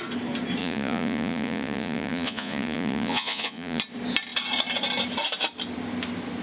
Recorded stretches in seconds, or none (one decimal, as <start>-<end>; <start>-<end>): 0.0-0.6; 3.8-6.4